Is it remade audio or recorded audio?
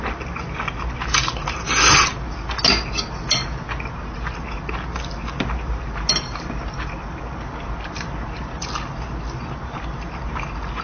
recorded